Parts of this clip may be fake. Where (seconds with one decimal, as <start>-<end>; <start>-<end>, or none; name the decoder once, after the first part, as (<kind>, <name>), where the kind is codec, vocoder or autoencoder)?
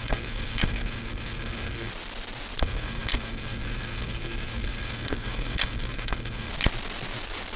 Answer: 0.0-1.9 (codec, SNAC); 2.6-6.5